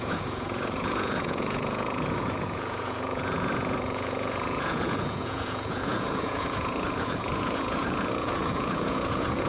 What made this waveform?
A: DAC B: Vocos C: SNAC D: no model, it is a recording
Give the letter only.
B